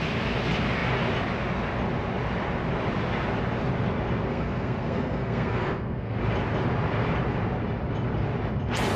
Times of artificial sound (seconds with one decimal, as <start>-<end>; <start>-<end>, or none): 4.3-6.2